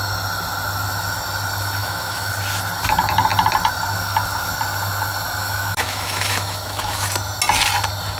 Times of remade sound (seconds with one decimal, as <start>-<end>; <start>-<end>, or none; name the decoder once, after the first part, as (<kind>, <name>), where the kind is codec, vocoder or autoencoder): 1.8-2.3 (autoencoder, DAC-VAE); 5.4-7.1